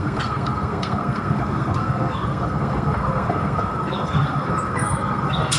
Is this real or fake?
fake